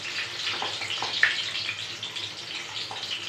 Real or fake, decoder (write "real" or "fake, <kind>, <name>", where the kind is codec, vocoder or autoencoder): real